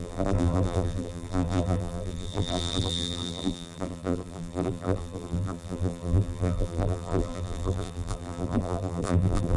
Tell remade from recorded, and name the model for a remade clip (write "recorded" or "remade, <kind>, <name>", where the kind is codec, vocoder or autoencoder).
remade, vocoder, BigVGAN v2